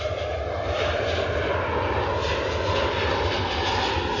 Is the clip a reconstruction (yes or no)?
no